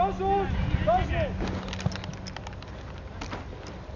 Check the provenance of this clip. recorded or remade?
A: recorded